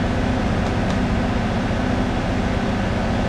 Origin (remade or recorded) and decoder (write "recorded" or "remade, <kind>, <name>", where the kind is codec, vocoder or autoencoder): recorded